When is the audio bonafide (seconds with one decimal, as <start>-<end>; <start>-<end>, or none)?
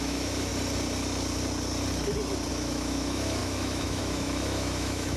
0.5-2.5